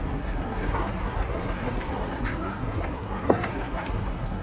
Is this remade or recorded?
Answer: remade